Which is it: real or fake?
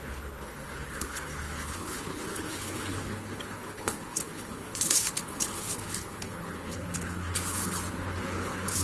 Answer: fake